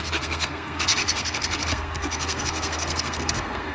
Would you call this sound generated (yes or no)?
yes